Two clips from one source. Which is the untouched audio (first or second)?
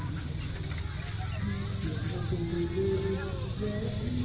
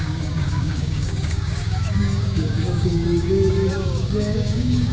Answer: first